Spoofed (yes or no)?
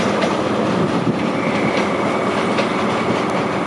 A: yes